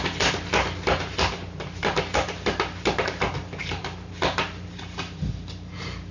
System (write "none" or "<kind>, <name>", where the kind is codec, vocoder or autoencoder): none